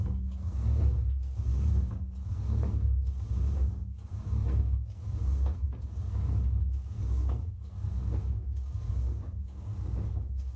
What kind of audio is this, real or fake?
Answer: fake